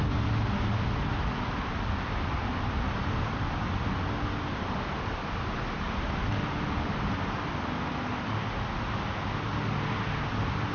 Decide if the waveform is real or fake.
real